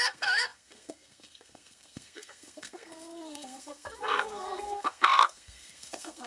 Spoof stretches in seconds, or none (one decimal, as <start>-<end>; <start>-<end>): 0.0-6.3